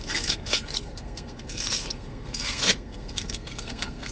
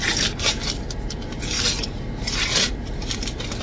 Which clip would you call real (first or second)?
second